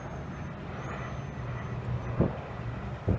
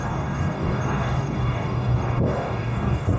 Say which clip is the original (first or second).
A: first